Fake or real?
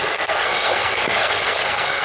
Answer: fake